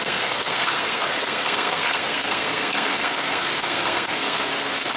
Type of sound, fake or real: fake